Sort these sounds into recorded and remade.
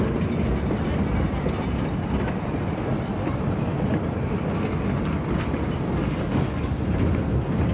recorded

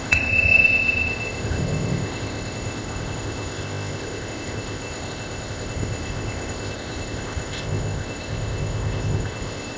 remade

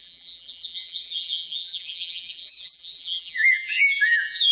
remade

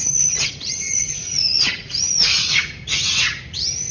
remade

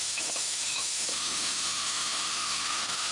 remade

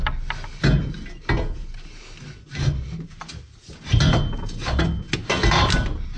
recorded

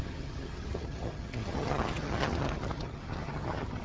remade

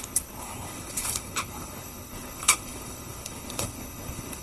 remade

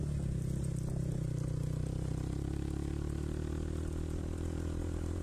recorded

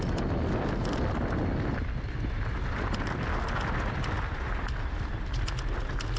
recorded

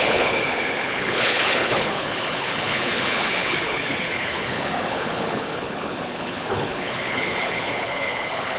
remade